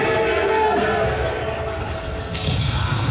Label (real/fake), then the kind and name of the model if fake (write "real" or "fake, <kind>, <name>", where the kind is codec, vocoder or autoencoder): fake, codec, SNAC